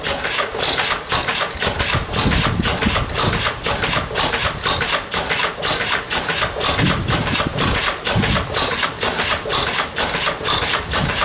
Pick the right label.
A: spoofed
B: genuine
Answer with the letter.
B